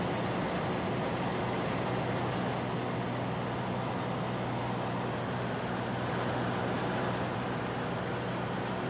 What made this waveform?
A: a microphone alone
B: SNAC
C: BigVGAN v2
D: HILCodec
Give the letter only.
A